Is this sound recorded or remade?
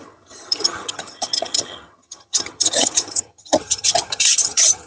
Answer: remade